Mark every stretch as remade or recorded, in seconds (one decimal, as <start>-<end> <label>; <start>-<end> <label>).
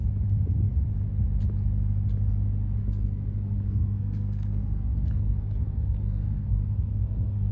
0.0-2.8 recorded; 2.8-7.5 remade